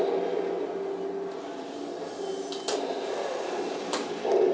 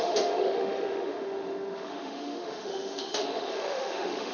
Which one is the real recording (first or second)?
first